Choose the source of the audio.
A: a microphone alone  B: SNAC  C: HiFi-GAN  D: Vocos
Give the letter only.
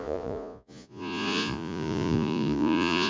D